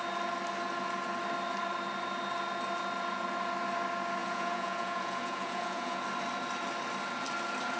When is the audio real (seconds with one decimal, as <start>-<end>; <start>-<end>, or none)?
0.0-4.2; 6.0-7.8